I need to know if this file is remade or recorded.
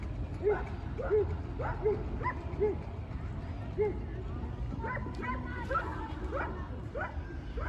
recorded